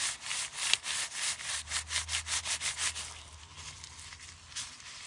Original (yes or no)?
yes